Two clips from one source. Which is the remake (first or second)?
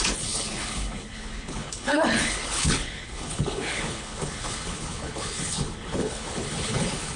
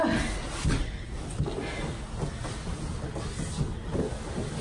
first